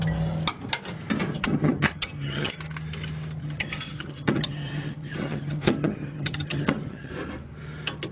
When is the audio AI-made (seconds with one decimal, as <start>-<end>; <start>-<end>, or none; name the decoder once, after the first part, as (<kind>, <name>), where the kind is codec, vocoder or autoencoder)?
1.3-2.5 (vocoder, HiFi-GAN); 3.4-7.1